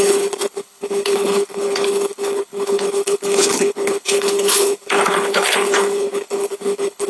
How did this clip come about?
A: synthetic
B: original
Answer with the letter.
A